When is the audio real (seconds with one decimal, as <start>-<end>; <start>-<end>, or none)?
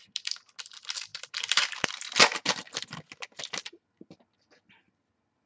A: 0.0-5.5